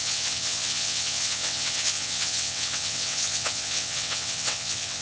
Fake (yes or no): yes